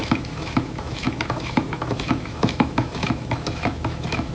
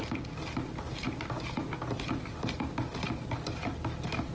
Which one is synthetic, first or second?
first